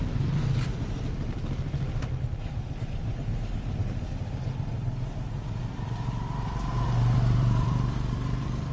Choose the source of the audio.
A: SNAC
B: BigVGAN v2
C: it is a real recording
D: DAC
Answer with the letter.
B